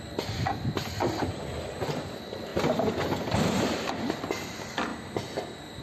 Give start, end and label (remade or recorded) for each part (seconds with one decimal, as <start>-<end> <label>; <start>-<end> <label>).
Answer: 0.0-5.8 recorded